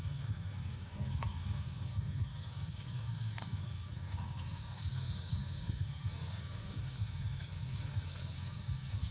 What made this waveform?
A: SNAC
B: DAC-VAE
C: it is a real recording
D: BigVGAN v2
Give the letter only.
A